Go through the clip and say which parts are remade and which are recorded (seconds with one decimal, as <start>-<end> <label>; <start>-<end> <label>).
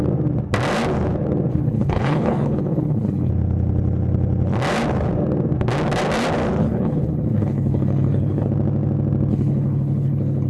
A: 0.0-1.5 recorded; 1.5-3.3 remade; 3.3-6.6 recorded; 6.6-8.5 remade; 8.5-9.3 recorded; 9.3-10.5 remade